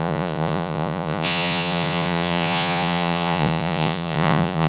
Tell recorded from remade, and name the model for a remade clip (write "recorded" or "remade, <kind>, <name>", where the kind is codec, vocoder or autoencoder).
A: remade, vocoder, Vocos